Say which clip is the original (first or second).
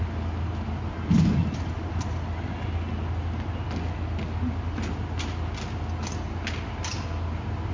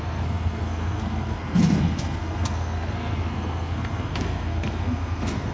first